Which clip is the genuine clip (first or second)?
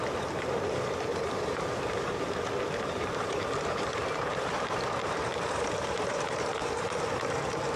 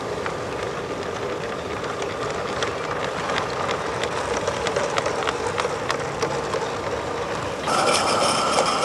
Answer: second